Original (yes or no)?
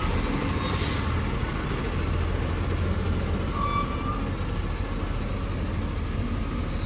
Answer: yes